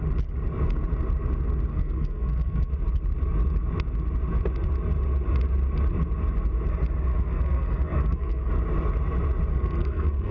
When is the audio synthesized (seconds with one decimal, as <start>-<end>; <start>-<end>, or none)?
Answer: 1.7-2.7; 7.1-8.5; 9.5-10.3